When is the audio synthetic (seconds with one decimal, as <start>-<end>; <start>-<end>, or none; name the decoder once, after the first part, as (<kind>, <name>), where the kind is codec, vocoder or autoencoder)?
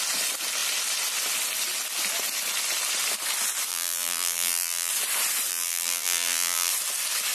3.7-4.9 (vocoder, BigVGAN v2); 5.5-6.7